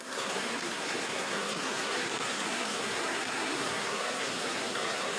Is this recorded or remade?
remade